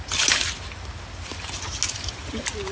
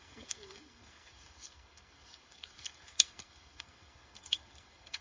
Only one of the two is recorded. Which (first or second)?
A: first